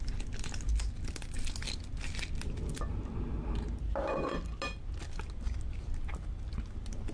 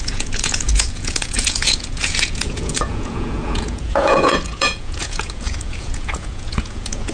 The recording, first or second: first